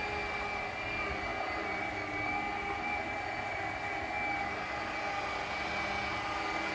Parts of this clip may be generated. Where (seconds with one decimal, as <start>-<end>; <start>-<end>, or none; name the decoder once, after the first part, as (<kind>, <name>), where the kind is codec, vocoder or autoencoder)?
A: none

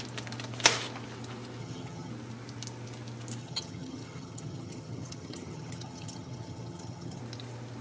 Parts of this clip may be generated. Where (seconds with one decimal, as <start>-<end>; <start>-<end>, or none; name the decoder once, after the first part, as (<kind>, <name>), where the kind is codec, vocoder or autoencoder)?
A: 1.6-2.1 (vocoder, HiFi-GAN); 3.4-7.2

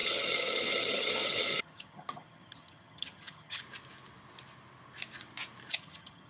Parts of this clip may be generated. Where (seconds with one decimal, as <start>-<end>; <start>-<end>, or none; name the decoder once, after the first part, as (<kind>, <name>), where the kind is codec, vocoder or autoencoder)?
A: 0.0-3.6 (vocoder, HiFi-GAN); 5.7-6.3